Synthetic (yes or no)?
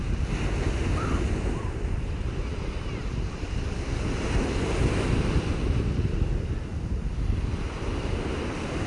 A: no